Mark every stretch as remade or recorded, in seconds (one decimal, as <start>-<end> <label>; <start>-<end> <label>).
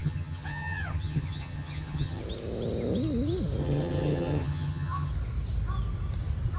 0.0-2.2 remade; 2.2-3.6 recorded; 3.6-5.1 remade; 5.1-6.6 recorded